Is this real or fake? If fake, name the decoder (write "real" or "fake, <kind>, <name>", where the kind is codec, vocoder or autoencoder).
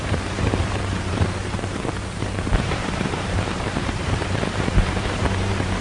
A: fake, vocoder, BigVGAN v2